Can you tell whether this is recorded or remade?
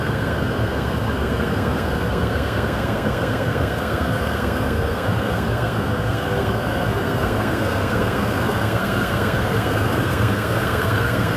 remade